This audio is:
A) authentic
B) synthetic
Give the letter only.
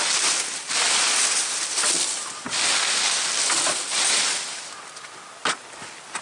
A